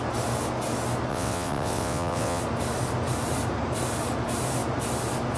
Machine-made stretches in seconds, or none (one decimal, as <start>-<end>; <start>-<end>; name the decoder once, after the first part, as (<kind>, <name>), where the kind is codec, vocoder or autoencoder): 1.1-2.4 (vocoder, WaveNeXt)